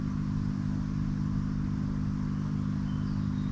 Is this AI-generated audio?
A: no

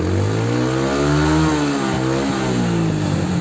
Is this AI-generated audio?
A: no